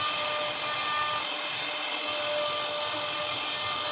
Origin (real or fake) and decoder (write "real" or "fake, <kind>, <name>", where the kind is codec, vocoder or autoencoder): real